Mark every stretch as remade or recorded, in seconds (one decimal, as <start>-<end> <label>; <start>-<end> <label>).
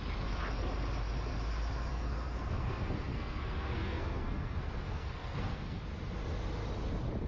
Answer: 0.0-1.9 recorded; 1.9-5.8 remade; 5.8-7.3 recorded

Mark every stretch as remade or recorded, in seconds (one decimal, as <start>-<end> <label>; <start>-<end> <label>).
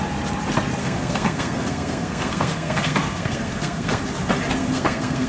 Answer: 0.0-0.8 recorded; 0.8-4.0 remade; 4.0-4.6 recorded; 4.6-5.3 remade